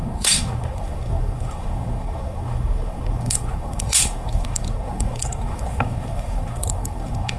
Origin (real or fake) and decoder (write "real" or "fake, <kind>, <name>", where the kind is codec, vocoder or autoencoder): fake, codec, SNAC